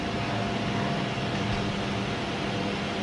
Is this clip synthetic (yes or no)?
no